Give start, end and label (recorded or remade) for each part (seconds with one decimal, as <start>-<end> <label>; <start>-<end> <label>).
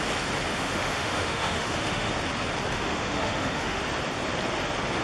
0.0-0.5 recorded; 0.5-2.1 remade; 2.1-2.7 recorded; 2.7-3.8 remade; 3.8-5.0 recorded